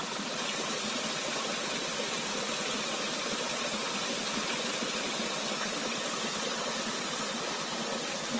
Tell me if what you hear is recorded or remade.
recorded